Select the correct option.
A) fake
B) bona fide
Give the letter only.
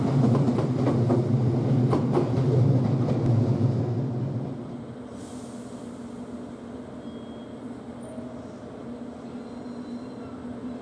B